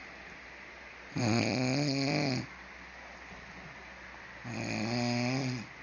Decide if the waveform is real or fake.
real